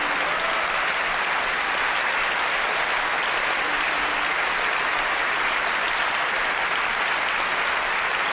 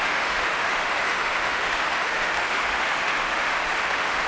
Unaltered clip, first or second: first